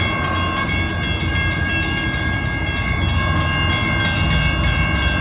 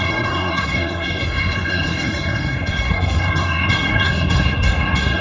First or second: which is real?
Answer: first